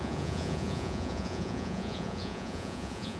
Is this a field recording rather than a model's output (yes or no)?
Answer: no